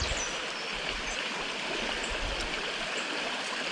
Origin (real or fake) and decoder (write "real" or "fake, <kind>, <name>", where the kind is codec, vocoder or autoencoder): real